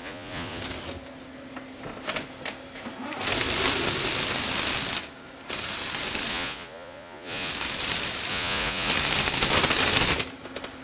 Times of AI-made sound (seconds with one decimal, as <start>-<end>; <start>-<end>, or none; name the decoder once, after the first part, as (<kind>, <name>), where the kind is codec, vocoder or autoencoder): 0.0-0.6 (vocoder, Vocos); 6.3-7.5; 8.3-8.9